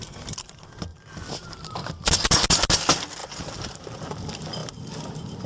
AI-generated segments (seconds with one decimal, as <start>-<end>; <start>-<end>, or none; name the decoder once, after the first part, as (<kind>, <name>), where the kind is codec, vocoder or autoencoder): 0.9-2.1 (vocoder, BigVGAN v2); 3.2-3.8